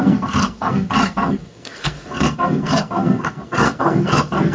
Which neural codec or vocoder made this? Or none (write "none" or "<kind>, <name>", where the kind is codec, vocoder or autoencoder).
codec, SNAC